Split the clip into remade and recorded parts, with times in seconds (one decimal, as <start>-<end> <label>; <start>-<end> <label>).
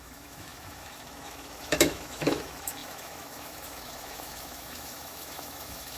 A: 0.0-6.0 remade